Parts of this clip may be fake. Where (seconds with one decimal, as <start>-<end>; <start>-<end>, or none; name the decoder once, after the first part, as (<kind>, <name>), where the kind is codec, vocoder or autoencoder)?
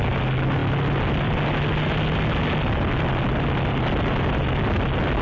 none